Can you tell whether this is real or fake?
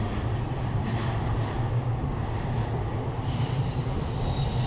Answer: real